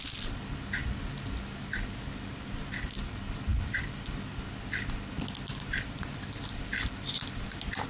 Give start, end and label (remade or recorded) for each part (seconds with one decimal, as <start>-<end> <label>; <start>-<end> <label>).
0.0-7.9 recorded